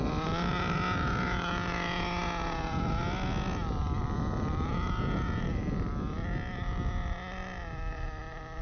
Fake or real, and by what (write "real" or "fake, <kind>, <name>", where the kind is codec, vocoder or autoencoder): real